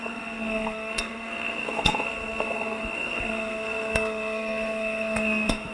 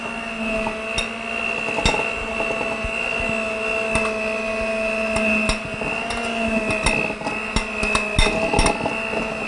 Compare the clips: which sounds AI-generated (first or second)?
first